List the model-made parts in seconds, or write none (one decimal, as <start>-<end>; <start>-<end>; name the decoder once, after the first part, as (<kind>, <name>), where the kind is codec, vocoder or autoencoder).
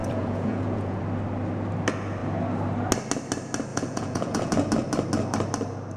0.0-1.0 (vocoder, Vocos); 3.7-4.5